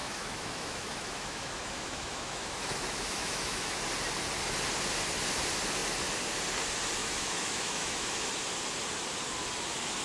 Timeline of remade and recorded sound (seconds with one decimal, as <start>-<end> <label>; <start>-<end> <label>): 0.0-3.8 remade; 3.8-7.0 recorded; 7.0-8.3 remade; 8.3-10.0 recorded